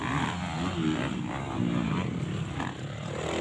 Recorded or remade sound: recorded